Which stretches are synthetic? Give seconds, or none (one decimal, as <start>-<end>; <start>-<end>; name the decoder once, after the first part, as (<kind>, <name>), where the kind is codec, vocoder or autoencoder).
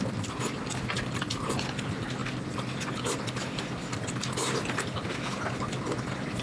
none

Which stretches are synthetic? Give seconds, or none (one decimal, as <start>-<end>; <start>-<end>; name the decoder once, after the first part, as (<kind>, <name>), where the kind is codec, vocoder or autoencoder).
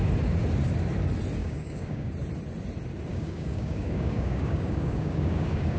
1.4-2.1 (codec, DAC); 3.1-5.8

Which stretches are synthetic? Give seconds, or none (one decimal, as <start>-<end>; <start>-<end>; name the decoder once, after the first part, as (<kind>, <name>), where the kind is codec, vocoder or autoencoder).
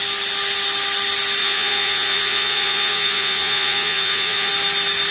1.4-4.5 (vocoder, Vocos)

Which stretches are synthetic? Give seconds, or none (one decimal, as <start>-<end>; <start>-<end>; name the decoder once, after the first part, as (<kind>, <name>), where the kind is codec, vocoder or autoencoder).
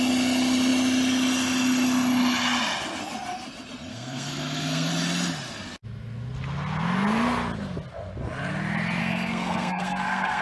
3.9-4.9 (codec, SNAC); 9.0-10.4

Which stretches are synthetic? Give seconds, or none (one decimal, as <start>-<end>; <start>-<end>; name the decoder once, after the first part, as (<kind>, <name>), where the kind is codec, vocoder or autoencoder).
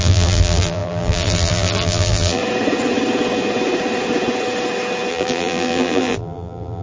0.0-2.4 (vocoder, BigVGAN v2); 5.1-6.8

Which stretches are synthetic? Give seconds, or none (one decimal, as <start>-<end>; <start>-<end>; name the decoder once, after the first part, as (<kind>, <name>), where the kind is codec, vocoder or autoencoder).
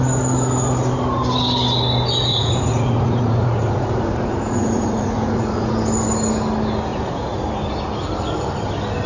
2.3-5.7 (vocoder, Vocos); 6.9-7.4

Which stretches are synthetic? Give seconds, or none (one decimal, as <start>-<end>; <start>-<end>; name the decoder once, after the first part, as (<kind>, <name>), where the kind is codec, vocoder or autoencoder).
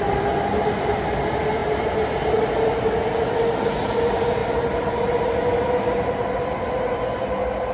none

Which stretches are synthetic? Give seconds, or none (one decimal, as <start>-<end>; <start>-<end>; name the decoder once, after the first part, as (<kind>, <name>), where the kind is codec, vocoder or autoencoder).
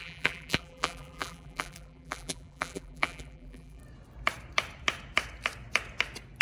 0.0-3.8 (vocoder, BigVGAN v2)